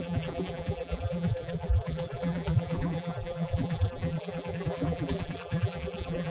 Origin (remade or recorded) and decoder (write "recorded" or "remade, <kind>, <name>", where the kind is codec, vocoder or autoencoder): remade, vocoder, BigVGAN v2